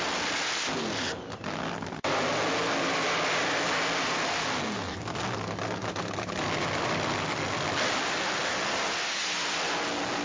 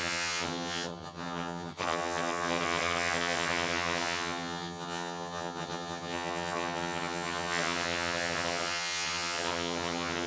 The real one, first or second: first